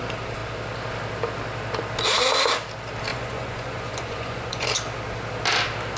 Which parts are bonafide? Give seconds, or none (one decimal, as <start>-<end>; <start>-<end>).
0.0-3.1; 4.7-6.0